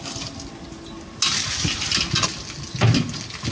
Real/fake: real